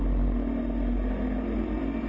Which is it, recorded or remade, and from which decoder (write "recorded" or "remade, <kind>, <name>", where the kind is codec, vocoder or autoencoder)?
recorded